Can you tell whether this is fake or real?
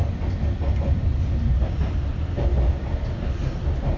real